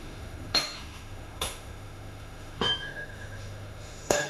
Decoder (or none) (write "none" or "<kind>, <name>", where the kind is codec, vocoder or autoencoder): autoencoder, DAC-VAE